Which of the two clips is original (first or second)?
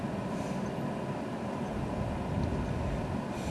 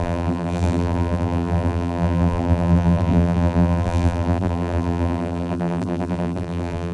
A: first